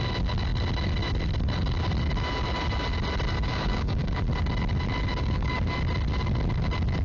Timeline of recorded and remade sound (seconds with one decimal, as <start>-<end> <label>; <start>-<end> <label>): 0.0-3.5 recorded; 3.5-4.2 remade; 4.2-5.1 recorded; 5.1-5.6 remade; 5.6-7.0 recorded